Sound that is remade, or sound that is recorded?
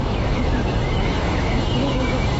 remade